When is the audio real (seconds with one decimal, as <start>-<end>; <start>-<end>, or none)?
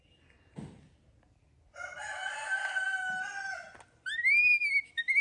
0.0-5.2